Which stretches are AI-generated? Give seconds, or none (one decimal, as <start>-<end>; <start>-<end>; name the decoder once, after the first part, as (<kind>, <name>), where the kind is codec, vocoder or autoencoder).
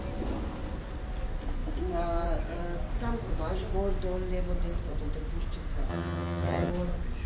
5.9-6.7 (vocoder, HiFi-GAN)